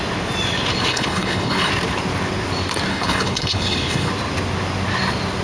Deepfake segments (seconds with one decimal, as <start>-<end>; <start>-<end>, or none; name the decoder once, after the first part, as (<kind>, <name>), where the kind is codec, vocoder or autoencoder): 0.9-1.7 (codec, HILCodec); 2.9-4.1